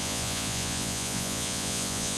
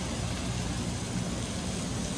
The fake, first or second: first